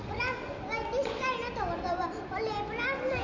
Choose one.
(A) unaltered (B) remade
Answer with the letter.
A